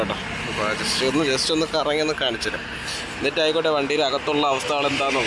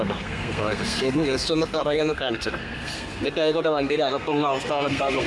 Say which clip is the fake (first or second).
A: second